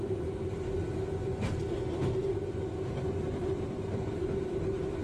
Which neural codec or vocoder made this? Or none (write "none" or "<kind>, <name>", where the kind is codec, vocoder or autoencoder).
none